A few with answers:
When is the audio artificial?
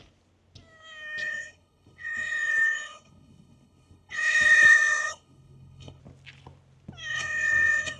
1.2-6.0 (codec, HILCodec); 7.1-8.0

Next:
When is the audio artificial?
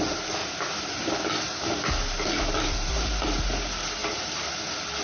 4.0-4.6 (vocoder, BigVGAN v2)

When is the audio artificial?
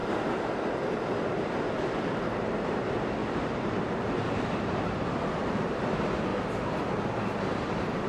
3.2-5.8 (vocoder, BigVGAN v2); 6.3-8.1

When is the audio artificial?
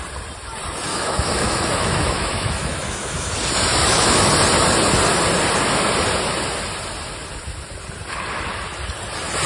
0.9-3.3 (autoencoder, DAC-VAE); 3.7-4.3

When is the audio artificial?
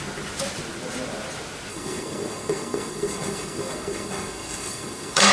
1.7-5.3 (codec, SNAC)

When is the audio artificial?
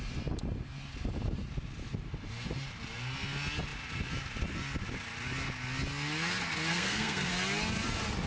6.7-7.3 (codec, SNAC)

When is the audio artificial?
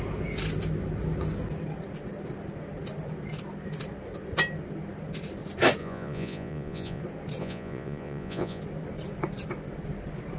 5.8-7.0 (vocoder, Vocos); 7.4-8.6